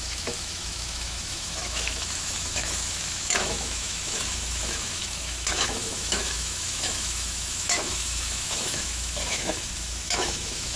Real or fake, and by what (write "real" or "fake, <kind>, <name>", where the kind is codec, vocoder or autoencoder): fake, autoencoder, DAC-VAE